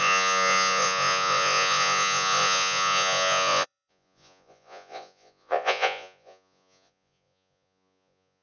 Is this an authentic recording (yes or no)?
no